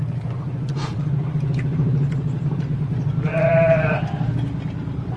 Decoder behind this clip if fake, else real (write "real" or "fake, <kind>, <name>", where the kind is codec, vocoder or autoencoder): fake, vocoder, BigVGAN v2